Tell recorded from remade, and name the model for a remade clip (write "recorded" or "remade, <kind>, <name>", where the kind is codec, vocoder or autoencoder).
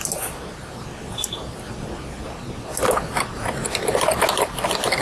recorded